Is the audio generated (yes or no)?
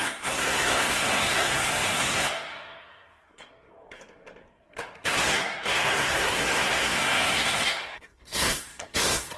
yes